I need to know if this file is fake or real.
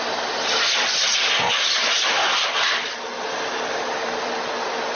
real